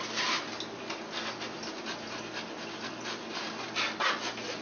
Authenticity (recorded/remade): recorded